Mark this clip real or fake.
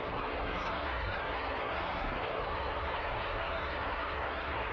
fake